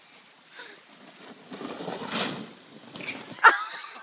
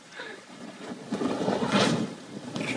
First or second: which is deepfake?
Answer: second